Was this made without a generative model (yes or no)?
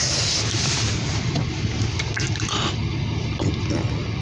yes